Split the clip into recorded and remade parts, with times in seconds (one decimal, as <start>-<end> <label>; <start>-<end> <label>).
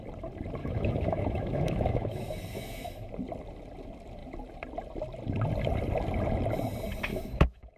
0.0-0.6 recorded; 0.6-3.1 remade; 3.1-7.1 recorded; 7.1-7.8 remade